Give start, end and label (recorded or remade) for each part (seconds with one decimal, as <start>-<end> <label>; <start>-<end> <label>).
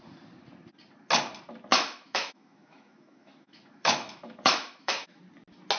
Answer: 0.0-1.7 recorded; 1.7-5.2 remade; 5.2-5.8 recorded